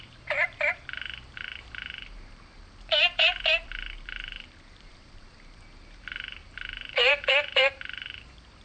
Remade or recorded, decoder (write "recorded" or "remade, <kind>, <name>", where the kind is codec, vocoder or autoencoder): remade, vocoder, BigVGAN v2